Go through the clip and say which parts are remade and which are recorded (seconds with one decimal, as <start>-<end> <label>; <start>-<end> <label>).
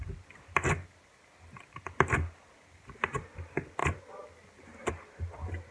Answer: 0.0-5.7 recorded